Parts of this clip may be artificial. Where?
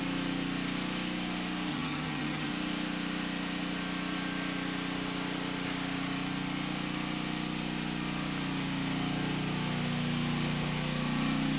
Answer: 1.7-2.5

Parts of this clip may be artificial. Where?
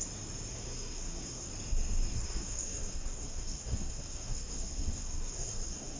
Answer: 0.5-1.5; 2.1-6.0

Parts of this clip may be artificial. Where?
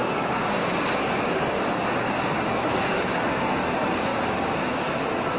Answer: 0.0-3.2; 4.1-5.0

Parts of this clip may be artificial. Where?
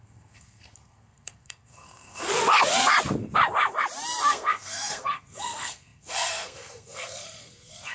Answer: 0.0-2.3; 4.3-7.9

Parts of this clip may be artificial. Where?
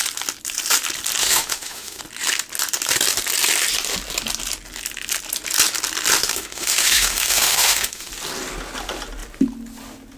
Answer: 1.2-2.0; 6.2-8.1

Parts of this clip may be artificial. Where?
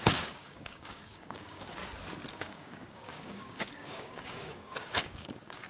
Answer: 0.0-1.8; 2.3-5.7